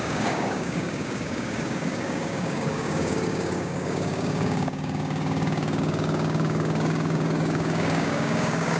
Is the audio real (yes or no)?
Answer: no